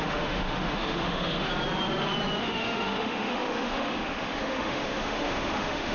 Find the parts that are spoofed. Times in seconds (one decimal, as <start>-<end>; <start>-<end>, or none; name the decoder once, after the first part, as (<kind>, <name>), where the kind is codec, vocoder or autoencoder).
0.0-1.5 (autoencoder, DAC-VAE); 2.4-5.9